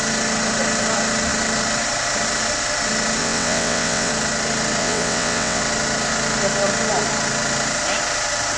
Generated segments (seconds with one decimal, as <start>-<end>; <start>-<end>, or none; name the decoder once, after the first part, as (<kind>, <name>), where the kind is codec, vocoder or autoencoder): 3.2-4.1 (vocoder, WaveNeXt); 4.8-5.6

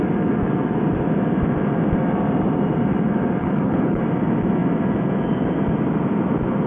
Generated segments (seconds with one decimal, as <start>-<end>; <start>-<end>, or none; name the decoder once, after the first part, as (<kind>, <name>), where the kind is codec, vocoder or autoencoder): 3.4-4.0 (codec, HILCodec)

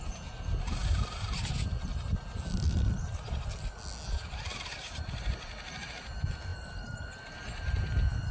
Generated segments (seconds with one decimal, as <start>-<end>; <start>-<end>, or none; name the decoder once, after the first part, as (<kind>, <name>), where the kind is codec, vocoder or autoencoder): none

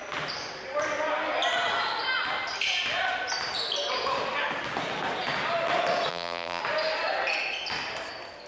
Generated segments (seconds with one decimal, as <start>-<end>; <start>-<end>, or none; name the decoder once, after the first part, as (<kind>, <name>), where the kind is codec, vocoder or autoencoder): 6.1-6.6 (vocoder, BigVGAN v2)

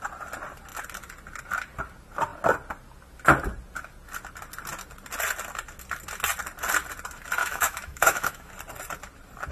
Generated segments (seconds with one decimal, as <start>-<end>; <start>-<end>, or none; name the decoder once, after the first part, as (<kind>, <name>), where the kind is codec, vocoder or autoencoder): 7.4-8.5 (autoencoder, DAC-VAE)

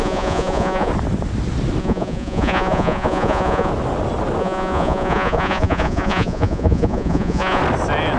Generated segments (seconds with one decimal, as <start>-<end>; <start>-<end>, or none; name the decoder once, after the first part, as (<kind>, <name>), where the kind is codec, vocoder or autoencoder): 0.0-0.9 (vocoder, Vocos); 1.8-3.7; 4.4-7.6

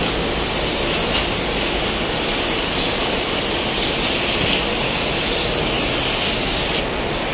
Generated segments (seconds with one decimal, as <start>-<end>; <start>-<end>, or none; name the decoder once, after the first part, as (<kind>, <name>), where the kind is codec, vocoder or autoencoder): none

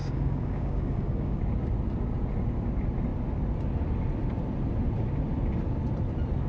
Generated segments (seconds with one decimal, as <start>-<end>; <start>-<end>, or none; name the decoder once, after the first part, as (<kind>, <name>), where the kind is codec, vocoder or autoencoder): 0.0-1.4 (codec, DAC)